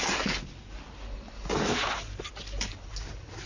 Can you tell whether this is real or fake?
real